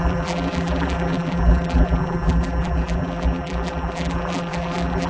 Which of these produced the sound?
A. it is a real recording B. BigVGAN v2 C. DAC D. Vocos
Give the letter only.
B